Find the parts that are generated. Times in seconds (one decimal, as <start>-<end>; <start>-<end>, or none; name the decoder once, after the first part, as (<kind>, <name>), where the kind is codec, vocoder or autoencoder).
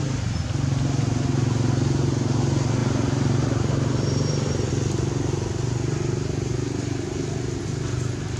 2.8-4.7 (vocoder, BigVGAN v2)